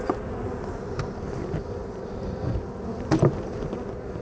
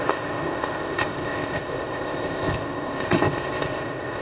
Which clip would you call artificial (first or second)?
second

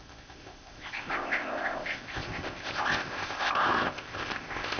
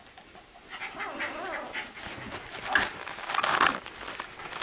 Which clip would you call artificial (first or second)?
first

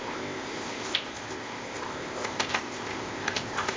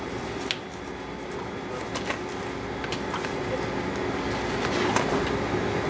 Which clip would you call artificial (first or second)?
first